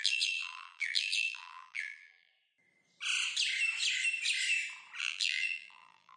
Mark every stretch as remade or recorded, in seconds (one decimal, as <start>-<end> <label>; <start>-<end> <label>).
0.0-2.3 remade; 2.3-5.0 recorded; 5.0-6.2 remade